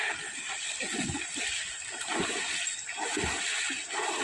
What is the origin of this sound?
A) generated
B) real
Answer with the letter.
B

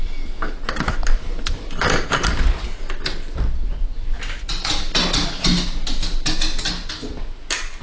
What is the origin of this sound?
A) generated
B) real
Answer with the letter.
B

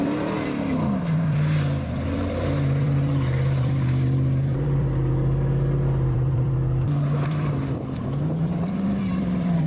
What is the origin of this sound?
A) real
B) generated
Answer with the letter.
B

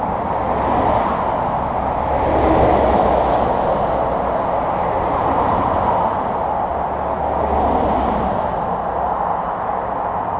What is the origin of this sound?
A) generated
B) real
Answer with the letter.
B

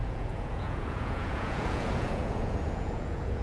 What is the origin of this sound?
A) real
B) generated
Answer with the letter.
B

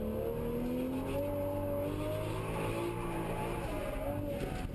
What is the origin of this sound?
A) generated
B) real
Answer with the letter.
B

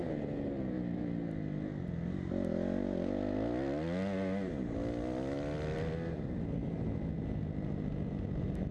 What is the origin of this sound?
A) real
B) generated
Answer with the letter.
A